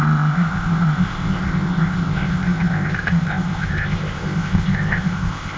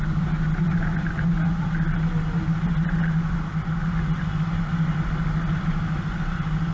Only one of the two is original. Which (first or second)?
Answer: second